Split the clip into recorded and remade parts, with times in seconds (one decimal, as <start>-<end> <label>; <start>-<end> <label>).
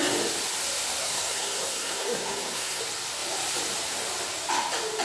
0.0-1.0 recorded; 1.0-2.8 remade; 2.8-5.0 recorded